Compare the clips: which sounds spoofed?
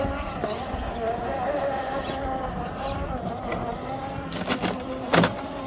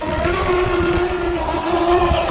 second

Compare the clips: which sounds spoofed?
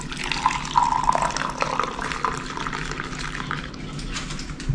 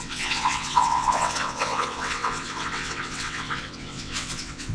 second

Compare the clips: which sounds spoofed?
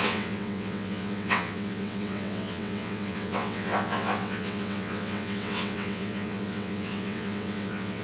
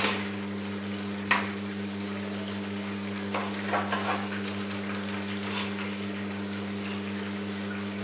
first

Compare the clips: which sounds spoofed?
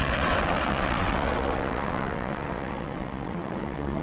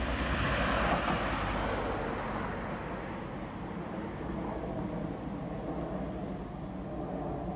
first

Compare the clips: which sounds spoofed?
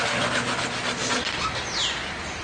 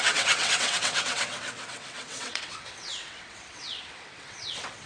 second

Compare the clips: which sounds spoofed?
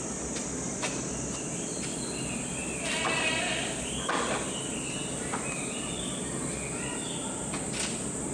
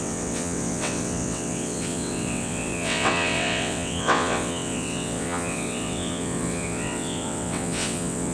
second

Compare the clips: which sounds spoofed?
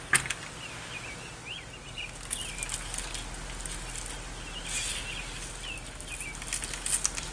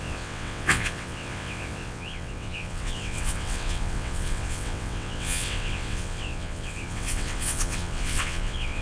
second